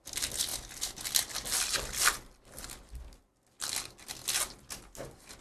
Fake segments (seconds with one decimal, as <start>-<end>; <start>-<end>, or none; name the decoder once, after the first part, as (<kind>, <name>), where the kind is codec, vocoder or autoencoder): none